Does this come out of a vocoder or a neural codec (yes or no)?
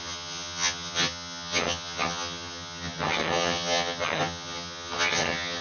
yes